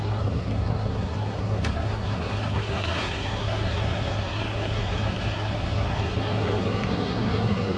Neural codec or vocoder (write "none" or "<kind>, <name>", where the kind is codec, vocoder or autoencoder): codec, SNAC